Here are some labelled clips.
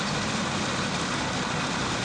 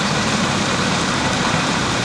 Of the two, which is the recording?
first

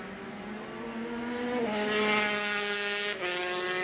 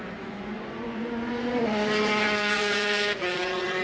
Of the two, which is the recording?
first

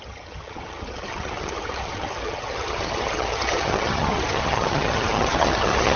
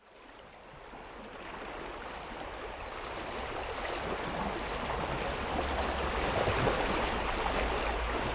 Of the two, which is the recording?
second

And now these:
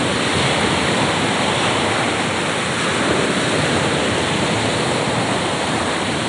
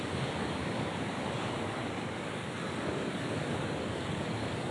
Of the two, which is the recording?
first